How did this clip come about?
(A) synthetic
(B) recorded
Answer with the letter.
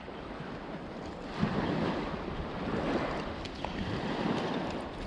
B